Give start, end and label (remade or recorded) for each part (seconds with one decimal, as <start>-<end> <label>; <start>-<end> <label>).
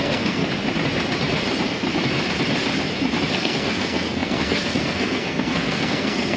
0.0-0.4 remade; 0.4-3.3 recorded; 3.3-6.4 remade